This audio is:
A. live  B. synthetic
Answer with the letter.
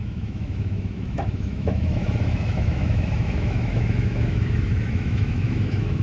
B